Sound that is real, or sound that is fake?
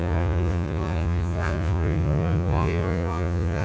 fake